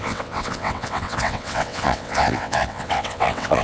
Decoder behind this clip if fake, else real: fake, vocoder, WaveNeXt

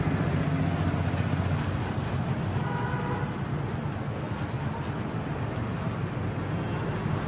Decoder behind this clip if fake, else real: real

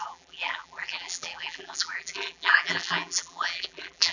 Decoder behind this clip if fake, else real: fake, vocoder, BigVGAN v2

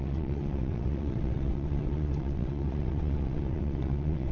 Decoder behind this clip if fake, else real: fake, vocoder, WaveNeXt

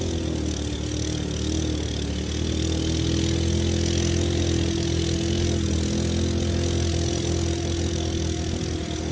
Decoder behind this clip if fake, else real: real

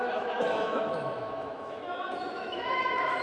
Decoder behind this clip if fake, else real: fake, autoencoder, DAC-VAE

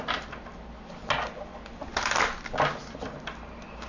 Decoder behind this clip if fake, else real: real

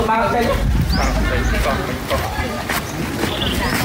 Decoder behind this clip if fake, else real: real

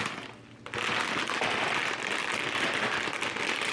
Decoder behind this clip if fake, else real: real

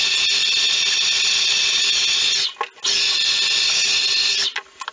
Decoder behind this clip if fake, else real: real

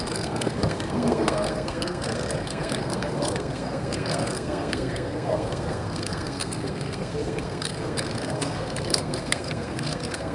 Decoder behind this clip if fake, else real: fake, codec, SNAC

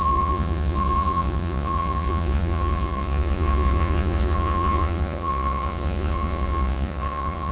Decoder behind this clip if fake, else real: fake, vocoder, Vocos